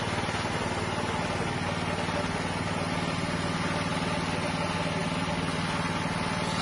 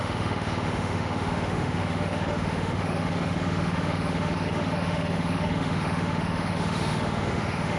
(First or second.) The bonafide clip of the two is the first